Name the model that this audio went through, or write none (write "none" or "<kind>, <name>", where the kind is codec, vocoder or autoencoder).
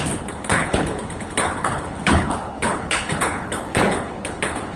codec, HILCodec